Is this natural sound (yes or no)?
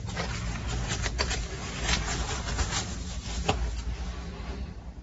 yes